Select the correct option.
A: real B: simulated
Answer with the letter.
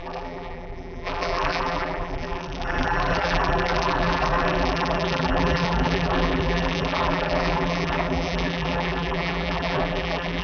B